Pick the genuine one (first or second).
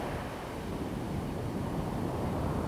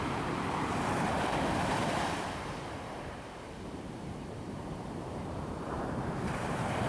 first